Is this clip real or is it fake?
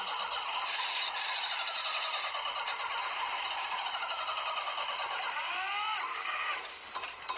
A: real